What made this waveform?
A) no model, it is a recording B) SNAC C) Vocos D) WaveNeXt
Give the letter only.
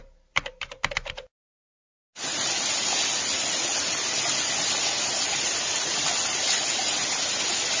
A